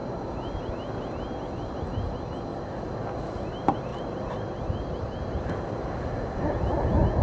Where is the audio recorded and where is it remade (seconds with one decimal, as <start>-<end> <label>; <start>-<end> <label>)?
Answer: 0.0-2.5 recorded; 2.5-3.0 remade; 3.0-3.9 recorded; 3.9-5.5 remade; 5.5-7.2 recorded